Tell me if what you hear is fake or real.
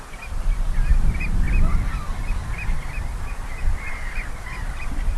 real